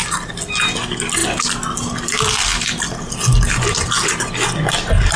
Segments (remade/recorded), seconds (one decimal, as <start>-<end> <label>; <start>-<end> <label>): 0.0-5.2 recorded